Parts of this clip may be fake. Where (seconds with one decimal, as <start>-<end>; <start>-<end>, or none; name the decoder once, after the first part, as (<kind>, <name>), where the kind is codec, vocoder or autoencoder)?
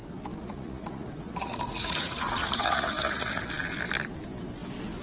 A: 0.4-3.4 (vocoder, Vocos)